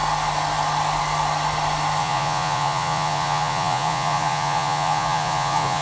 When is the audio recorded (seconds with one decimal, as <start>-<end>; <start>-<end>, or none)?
0.0-2.0